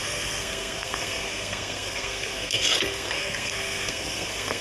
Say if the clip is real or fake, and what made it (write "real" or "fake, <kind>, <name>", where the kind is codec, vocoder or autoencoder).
fake, codec, SNAC